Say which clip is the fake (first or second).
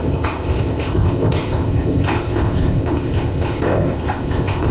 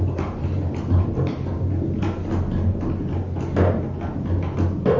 first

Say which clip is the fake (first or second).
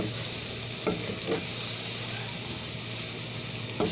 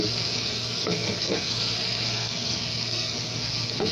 second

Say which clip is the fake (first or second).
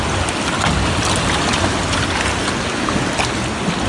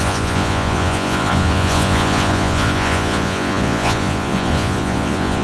second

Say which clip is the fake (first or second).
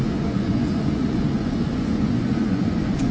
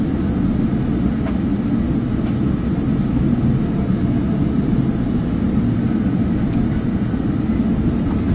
first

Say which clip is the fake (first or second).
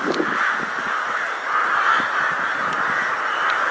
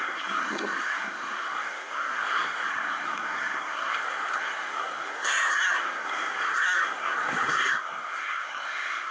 second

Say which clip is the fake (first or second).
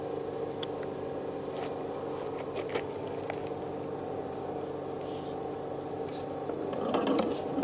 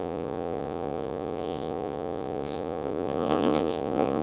second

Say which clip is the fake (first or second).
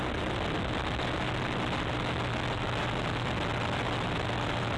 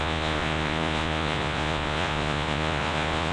second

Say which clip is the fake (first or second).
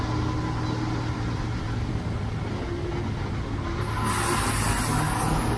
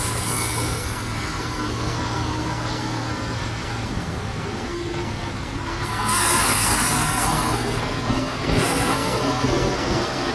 second